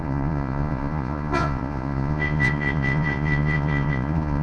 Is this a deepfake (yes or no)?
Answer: yes